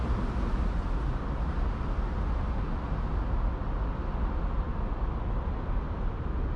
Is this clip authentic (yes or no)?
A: yes